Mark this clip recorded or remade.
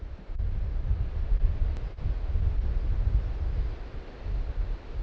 recorded